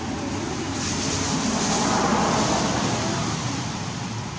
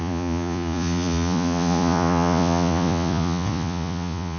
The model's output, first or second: second